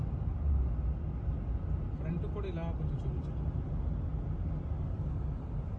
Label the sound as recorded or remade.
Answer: recorded